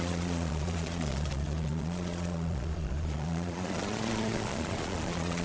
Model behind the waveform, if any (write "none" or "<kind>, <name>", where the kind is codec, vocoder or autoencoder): vocoder, Vocos